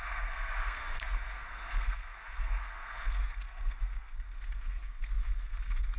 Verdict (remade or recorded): remade